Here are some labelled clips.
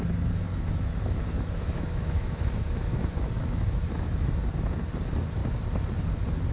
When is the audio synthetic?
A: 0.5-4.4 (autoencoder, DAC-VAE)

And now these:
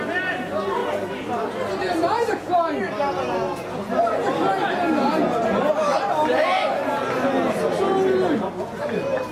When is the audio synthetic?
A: none